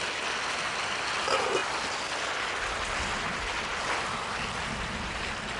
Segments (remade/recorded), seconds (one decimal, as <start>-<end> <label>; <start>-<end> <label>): 0.0-5.6 recorded